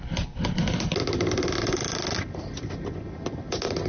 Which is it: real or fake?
real